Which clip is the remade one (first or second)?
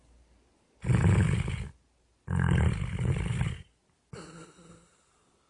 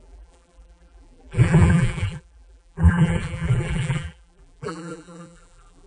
second